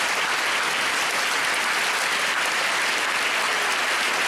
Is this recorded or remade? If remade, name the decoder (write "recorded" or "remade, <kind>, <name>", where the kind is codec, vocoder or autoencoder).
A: recorded